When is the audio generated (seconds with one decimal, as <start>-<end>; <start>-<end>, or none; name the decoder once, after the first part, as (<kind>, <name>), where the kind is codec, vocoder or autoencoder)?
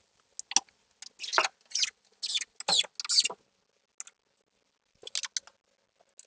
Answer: none